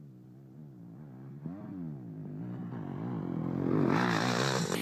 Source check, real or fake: real